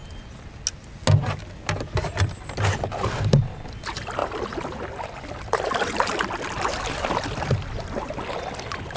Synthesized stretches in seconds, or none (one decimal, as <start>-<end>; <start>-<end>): none